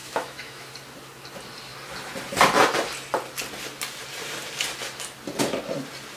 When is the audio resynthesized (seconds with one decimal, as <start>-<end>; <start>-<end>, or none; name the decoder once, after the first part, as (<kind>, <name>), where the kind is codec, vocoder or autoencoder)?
0.0-0.7 (autoencoder, DAC-VAE)